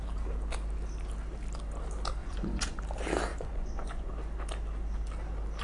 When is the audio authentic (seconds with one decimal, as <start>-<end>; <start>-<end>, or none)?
0.0-2.2; 2.8-3.3; 4.1-5.6